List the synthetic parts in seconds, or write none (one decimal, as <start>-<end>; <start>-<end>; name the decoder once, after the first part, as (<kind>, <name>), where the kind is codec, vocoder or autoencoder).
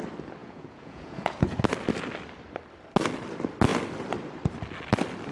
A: 0.4-1.6 (vocoder, Vocos)